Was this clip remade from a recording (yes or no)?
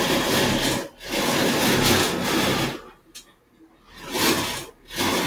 no